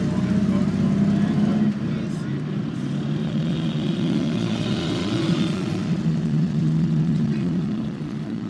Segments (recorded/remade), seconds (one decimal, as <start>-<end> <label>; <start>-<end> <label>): 0.0-3.2 recorded; 3.2-8.5 remade